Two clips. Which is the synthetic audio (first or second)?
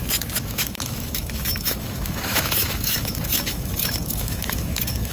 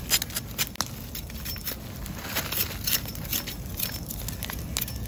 first